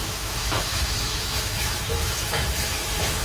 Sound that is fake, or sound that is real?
fake